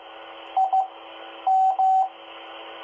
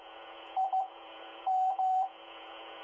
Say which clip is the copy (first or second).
second